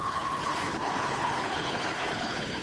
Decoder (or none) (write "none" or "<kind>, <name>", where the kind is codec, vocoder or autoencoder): codec, HILCodec